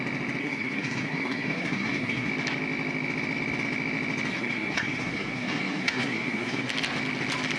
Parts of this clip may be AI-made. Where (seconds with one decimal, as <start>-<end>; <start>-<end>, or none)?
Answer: 0.4-2.3; 4.3-6.7

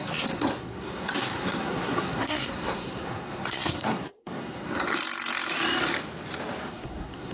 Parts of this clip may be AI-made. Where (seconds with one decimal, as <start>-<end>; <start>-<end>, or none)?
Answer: 0.0-4.9; 6.7-7.3

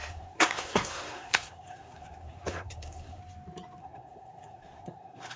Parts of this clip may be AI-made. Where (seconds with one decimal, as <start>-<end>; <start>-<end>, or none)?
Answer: 0.0-3.2; 3.8-5.4

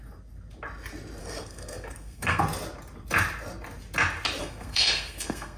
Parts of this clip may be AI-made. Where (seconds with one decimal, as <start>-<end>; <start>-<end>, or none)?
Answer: 1.2-2.4; 4.4-5.6

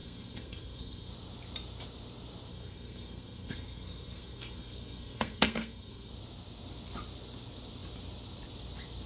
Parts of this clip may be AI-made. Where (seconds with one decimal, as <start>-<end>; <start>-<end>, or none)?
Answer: 0.0-1.1; 2.5-6.1

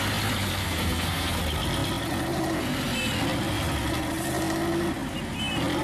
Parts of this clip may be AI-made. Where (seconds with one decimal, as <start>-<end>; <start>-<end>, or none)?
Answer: 0.6-1.4

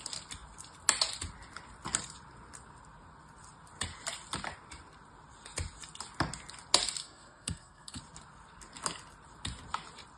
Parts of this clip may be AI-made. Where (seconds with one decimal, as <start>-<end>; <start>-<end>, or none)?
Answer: 7.0-8.0